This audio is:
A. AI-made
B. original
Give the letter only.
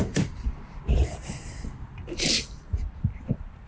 A